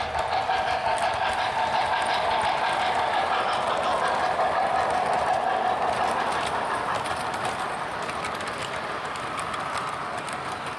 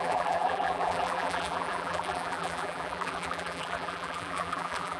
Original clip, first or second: first